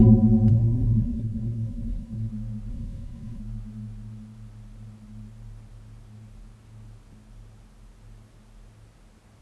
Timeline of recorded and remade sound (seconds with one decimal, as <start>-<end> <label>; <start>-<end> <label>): 0.0-0.5 recorded; 0.5-2.3 remade; 2.3-2.7 recorded; 2.7-3.4 remade; 3.4-9.4 recorded